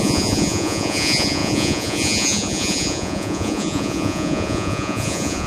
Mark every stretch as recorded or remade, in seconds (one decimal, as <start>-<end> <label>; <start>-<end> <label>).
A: 0.0-5.5 remade